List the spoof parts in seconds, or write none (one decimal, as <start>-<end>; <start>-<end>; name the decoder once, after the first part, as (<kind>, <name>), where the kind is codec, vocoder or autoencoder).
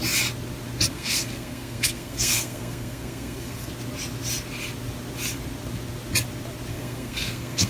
0.9-3.7 (codec, SNAC); 6.7-7.7